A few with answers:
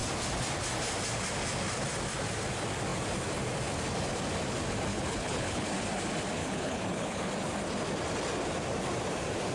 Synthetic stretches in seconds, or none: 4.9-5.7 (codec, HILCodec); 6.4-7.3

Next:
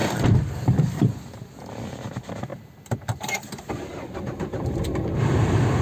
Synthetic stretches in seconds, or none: 2.5-4.2 (vocoder, BigVGAN v2)